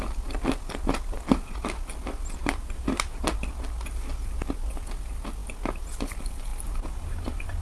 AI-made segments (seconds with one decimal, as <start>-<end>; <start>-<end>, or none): 2.4-3.4; 6.5-7.6